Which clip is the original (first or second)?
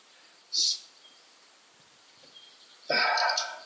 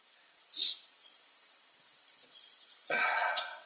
first